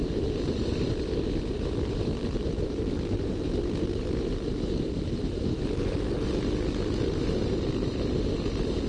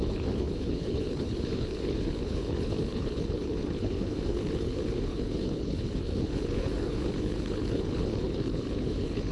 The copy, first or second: second